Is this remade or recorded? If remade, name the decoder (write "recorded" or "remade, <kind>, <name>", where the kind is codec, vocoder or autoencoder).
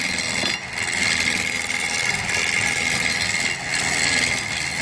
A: recorded